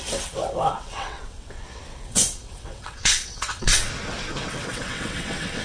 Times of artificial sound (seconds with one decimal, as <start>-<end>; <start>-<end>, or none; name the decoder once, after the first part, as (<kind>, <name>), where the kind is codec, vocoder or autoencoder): 0.0-3.9 (vocoder, WaveNeXt); 4.5-5.6